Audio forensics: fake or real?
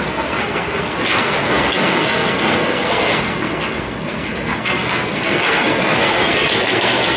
fake